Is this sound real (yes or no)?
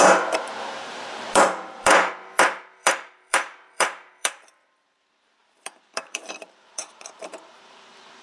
no